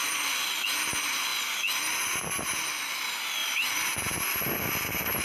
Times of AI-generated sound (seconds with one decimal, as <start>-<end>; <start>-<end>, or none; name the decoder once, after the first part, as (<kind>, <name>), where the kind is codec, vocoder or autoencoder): 3.4-5.2 (vocoder, BigVGAN v2)